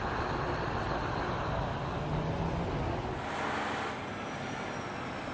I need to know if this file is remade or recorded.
recorded